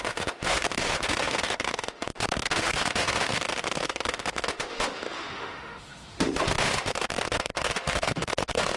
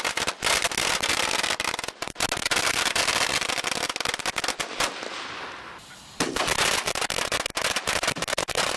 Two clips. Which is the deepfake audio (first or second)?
first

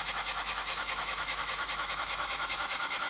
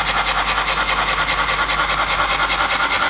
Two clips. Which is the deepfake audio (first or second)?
first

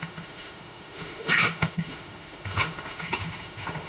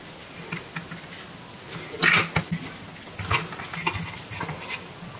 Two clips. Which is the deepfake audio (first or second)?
first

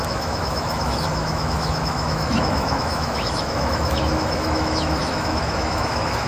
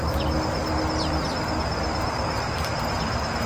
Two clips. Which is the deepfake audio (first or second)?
first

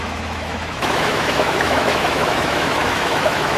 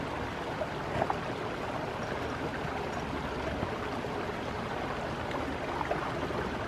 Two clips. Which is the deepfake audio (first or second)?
first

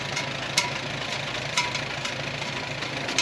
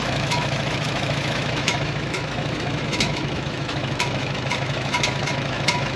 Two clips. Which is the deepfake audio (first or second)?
second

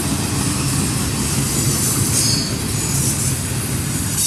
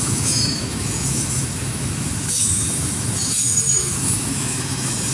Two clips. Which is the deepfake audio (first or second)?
second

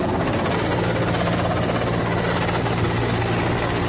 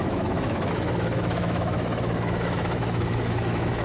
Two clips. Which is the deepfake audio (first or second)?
second